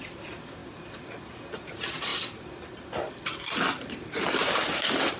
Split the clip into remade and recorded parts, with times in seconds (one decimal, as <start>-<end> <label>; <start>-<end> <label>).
0.0-0.6 remade; 0.6-1.7 recorded; 1.7-2.1 remade; 2.1-3.1 recorded; 3.1-5.2 remade